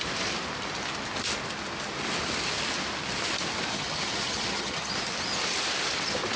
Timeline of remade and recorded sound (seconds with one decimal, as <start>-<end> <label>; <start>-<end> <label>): 0.0-3.7 recorded; 3.7-4.9 remade; 4.9-6.4 recorded